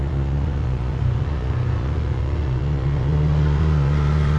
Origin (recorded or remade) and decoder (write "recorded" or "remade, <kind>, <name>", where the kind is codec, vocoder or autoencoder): remade, vocoder, Vocos